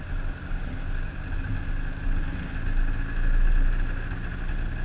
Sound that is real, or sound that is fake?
real